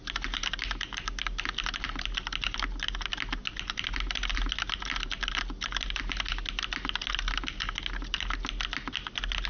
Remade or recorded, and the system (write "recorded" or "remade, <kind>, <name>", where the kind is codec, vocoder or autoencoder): recorded